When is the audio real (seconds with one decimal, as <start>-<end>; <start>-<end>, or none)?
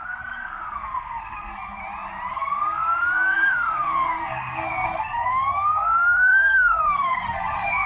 1.8-2.3